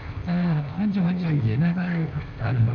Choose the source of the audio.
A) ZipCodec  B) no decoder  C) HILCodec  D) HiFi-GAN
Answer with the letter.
A